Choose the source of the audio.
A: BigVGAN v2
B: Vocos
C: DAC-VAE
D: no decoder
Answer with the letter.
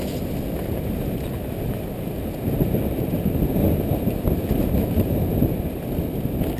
D